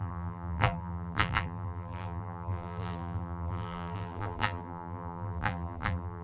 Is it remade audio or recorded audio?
remade